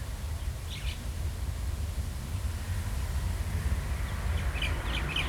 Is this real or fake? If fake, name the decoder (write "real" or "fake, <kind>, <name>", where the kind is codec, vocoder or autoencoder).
real